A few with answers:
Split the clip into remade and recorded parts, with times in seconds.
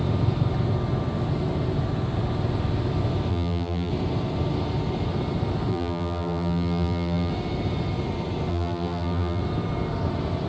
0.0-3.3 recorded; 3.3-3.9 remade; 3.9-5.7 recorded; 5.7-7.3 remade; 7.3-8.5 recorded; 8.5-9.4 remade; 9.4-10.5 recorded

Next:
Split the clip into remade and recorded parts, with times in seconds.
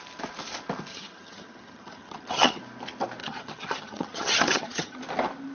0.0-0.9 recorded; 0.9-2.6 remade; 2.6-3.2 recorded; 3.2-5.0 remade; 5.0-5.5 recorded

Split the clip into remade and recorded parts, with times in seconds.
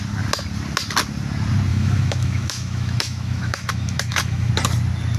0.0-1.7 recorded; 1.7-4.5 remade; 4.5-5.2 recorded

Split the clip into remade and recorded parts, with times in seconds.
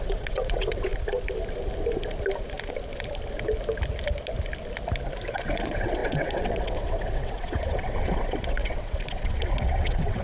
0.0-0.9 remade; 0.9-5.3 recorded; 5.3-10.2 remade